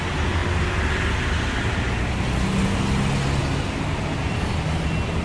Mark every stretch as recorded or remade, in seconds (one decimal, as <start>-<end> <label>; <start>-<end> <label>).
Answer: 0.0-5.2 recorded